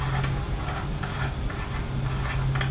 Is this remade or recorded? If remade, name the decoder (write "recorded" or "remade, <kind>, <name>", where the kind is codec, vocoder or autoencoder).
recorded